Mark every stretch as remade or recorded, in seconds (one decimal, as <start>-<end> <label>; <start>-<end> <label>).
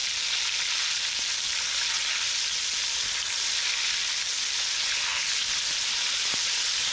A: 0.0-6.9 recorded